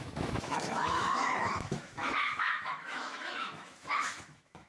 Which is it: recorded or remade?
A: remade